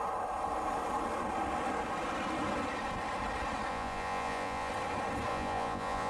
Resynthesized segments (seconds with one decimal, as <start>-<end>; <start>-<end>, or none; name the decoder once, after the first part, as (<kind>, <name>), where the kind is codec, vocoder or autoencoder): 3.7-4.7 (vocoder, Vocos); 5.3-6.1